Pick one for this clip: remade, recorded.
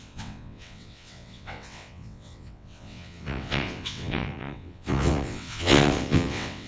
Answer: remade